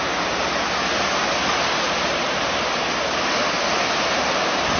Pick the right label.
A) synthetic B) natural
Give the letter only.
B